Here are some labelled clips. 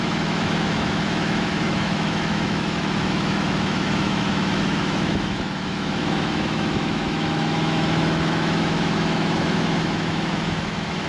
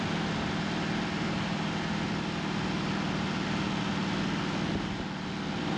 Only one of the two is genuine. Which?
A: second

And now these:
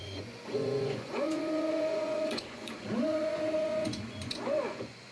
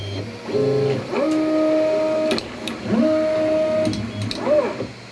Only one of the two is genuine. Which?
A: second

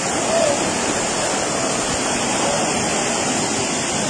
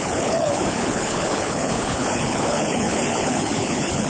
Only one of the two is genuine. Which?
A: first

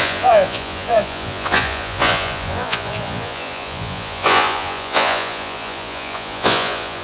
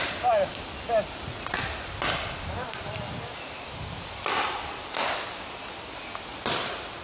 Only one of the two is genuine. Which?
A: second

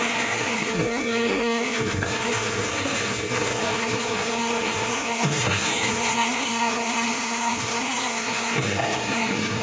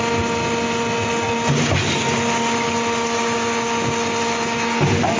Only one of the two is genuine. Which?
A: second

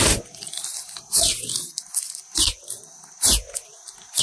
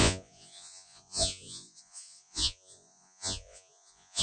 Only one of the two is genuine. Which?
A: first